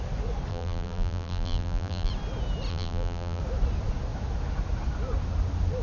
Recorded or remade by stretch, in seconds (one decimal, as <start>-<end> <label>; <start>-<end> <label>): 0.0-0.5 recorded; 0.5-2.1 remade; 2.1-2.7 recorded; 2.7-3.4 remade; 3.4-5.8 recorded